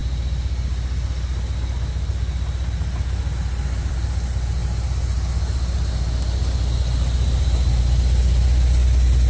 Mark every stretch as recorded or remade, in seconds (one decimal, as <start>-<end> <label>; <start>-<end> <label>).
0.0-9.3 recorded